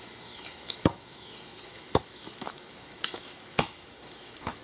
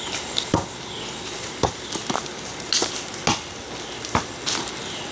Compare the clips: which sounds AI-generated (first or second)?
first